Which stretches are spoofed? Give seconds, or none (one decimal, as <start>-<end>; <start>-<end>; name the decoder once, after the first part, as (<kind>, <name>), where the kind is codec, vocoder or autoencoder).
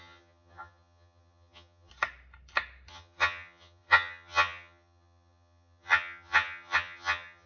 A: 0.0-1.9 (vocoder, HiFi-GAN); 2.9-7.5